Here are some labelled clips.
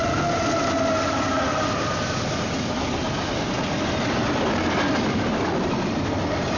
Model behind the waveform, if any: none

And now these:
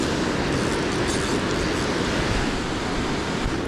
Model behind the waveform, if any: none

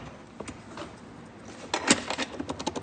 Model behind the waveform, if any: none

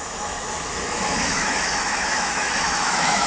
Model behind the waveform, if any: autoencoder, DAC-VAE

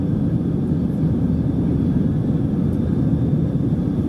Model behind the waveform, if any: none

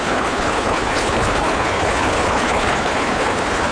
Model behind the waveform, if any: codec, HILCodec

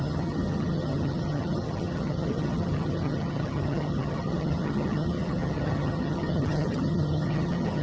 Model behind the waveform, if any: vocoder, HiFi-GAN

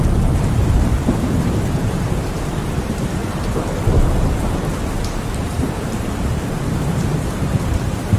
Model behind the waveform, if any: vocoder, BigVGAN v2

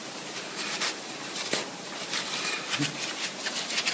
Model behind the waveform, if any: vocoder, BigVGAN v2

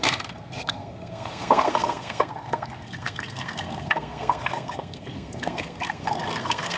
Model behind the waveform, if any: codec, SNAC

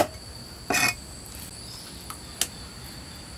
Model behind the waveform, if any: none